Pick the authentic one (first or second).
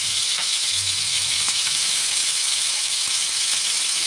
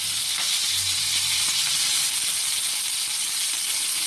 second